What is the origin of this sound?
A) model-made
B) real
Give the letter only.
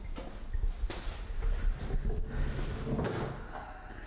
B